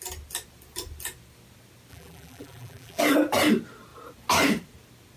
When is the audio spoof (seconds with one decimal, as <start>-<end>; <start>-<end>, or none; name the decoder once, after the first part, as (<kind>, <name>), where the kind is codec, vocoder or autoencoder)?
1.9-3.0 (vocoder, BigVGAN v2)